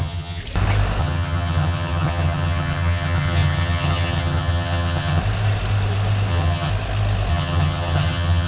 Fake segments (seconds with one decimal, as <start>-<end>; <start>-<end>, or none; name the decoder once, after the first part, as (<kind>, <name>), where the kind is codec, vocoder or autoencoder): 0.0-0.4 (vocoder, HiFi-GAN); 1.0-5.2; 6.3-6.7; 7.3-8.5